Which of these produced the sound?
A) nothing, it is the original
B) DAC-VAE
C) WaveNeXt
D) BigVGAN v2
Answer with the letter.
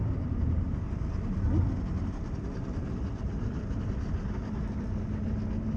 A